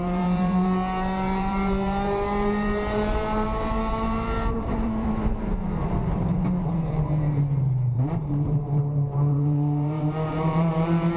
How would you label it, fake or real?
fake